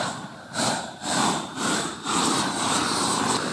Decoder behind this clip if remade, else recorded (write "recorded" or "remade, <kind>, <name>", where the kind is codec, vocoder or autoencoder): remade, vocoder, BigVGAN v2